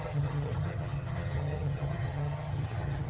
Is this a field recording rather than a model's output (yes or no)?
no